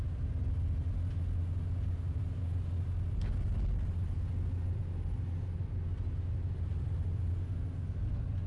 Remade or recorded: recorded